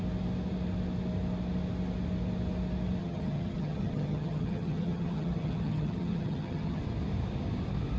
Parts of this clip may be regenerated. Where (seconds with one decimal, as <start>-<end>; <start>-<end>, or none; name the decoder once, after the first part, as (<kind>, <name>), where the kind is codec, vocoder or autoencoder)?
3.0-6.8 (vocoder, HiFi-GAN)